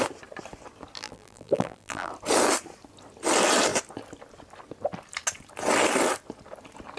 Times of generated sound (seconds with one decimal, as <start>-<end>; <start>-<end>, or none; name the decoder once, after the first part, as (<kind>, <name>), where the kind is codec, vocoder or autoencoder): 1.0-2.1 (vocoder, BigVGAN v2)